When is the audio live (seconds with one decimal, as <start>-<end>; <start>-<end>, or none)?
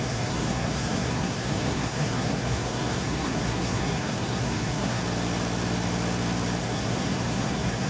5.0-6.6